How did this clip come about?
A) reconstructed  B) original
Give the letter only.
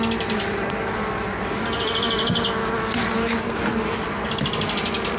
B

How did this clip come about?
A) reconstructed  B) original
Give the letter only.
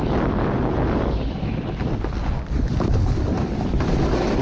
B